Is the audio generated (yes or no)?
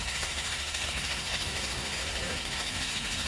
yes